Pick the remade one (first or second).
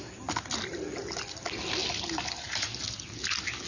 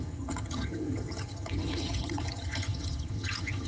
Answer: second